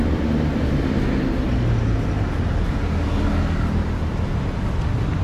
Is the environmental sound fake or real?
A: real